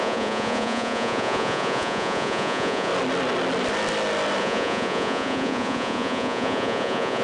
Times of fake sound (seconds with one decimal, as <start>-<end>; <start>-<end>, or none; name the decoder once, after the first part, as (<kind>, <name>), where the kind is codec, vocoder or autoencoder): 0.0-2.9 (vocoder, Vocos); 4.4-7.2

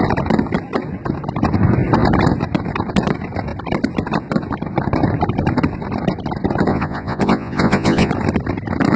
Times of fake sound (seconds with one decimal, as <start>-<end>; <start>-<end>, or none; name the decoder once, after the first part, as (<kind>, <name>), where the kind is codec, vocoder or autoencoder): 6.7-8.1 (vocoder, Vocos)

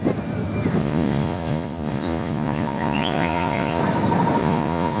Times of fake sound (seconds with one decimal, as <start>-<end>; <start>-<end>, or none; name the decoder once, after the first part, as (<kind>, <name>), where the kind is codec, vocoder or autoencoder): 0.8-3.8 (vocoder, Vocos); 4.4-5.0

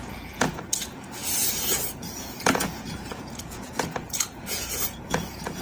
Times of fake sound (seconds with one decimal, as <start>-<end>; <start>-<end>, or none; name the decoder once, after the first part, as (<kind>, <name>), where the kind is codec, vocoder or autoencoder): 0.0-5.6 (vocoder, Vocos)

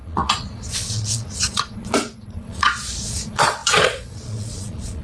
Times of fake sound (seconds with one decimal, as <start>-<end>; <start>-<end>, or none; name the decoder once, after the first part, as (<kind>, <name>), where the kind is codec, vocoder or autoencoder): 0.0-5.0 (vocoder, Vocos)

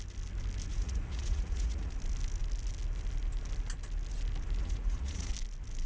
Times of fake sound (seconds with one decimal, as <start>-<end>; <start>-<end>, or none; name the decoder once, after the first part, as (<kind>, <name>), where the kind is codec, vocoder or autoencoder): 0.7-1.9 (vocoder, Vocos); 4.6-5.3